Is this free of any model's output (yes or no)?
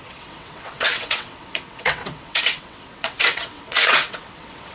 no